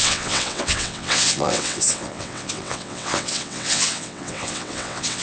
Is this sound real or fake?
fake